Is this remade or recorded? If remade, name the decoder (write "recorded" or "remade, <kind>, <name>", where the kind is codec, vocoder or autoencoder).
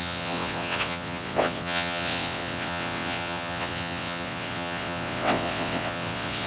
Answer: remade, vocoder, WaveNeXt